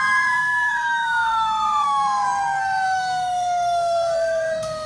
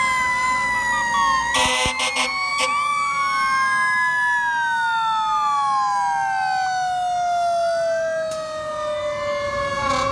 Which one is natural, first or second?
second